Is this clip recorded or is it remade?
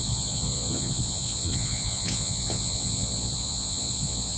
remade